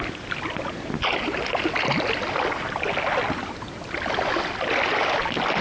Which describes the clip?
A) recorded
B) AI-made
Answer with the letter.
A